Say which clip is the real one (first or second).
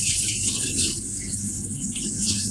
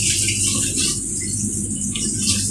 second